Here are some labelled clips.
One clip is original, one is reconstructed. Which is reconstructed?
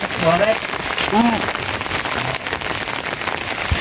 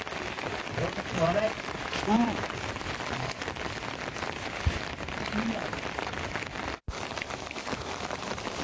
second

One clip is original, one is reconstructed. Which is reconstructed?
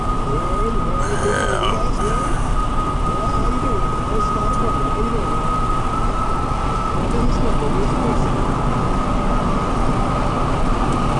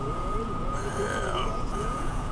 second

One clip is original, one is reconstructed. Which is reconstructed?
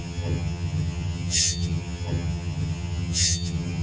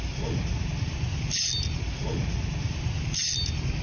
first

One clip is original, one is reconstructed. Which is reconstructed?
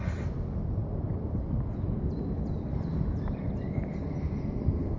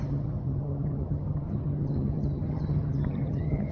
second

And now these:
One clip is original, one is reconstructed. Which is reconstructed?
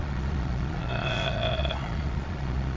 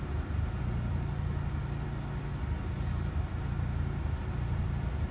first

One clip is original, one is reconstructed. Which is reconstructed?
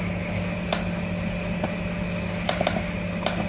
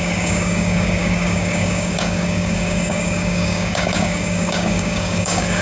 second